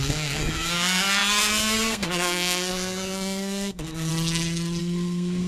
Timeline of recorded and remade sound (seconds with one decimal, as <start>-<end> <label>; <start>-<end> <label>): 0.0-4.1 remade; 4.1-4.8 recorded; 4.8-5.5 remade